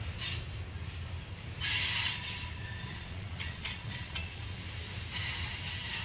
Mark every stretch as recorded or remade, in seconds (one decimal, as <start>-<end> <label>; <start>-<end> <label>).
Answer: 0.0-2.9 recorded; 2.9-4.4 remade; 4.4-6.0 recorded